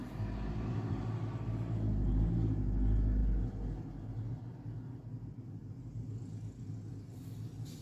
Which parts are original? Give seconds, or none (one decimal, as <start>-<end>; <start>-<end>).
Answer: 1.0-7.8